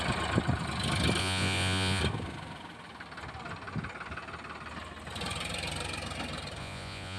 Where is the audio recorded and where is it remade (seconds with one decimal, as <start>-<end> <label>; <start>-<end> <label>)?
0.0-1.2 recorded; 1.2-2.0 remade; 2.0-6.6 recorded; 6.6-7.2 remade